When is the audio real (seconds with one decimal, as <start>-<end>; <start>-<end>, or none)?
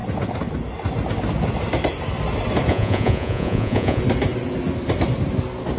0.0-2.7; 4.0-5.8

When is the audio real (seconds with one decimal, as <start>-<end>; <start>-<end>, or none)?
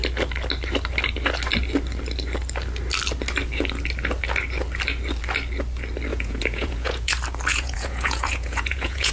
0.0-6.1; 7.1-7.5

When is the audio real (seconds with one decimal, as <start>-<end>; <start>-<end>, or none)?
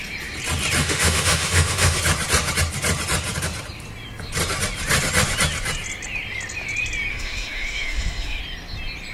0.0-0.8; 2.0-7.1; 8.4-9.1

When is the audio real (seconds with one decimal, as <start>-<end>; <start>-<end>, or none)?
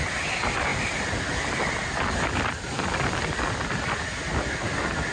0.0-5.1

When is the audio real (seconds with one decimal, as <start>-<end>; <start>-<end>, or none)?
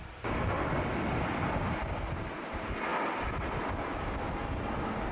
0.0-5.1